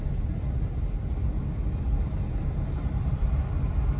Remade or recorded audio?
recorded